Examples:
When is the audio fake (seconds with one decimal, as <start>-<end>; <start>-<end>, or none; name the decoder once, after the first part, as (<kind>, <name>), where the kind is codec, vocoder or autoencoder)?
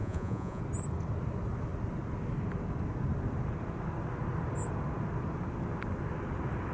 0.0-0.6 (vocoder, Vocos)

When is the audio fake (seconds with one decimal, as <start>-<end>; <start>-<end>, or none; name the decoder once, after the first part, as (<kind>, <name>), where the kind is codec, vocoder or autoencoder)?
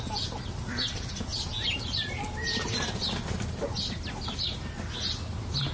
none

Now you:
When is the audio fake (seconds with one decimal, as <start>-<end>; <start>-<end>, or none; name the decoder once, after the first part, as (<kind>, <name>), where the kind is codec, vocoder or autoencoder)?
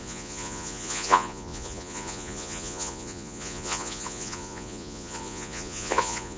0.0-6.4 (vocoder, Vocos)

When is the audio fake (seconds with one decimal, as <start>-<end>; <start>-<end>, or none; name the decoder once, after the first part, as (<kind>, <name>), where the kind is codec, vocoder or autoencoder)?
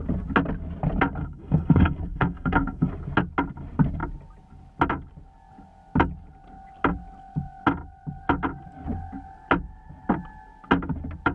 1.2-2.9 (codec, SNAC)